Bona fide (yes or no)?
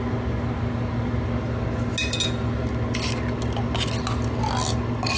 yes